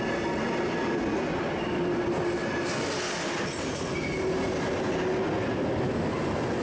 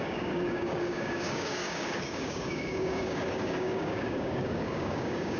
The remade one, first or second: second